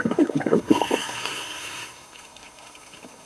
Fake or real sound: fake